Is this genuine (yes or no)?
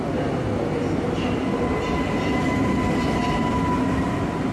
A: yes